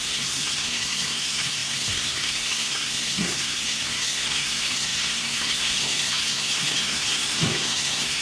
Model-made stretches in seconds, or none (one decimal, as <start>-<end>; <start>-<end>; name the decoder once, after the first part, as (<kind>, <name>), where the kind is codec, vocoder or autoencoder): 0.0-8.2 (codec, SNAC)